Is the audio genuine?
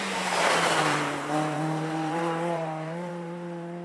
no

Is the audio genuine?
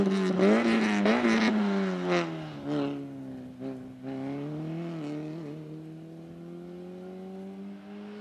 yes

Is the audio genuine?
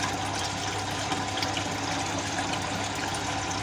yes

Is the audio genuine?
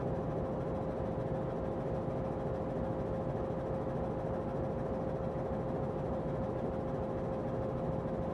yes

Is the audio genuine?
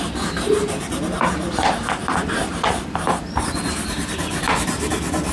no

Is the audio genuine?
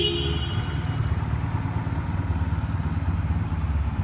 yes